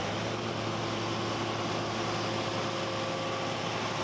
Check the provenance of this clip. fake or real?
real